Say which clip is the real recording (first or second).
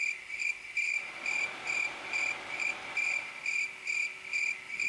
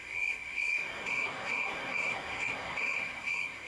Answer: first